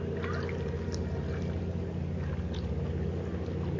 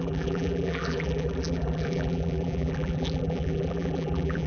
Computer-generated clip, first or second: second